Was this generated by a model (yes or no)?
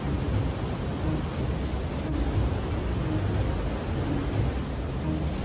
no